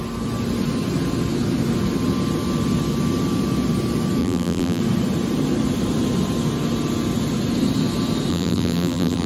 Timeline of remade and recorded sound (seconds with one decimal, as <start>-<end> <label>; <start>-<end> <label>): 0.0-4.2 recorded; 4.2-4.8 remade; 4.8-8.3 recorded; 8.3-9.3 remade